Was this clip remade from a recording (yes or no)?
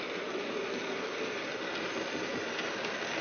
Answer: no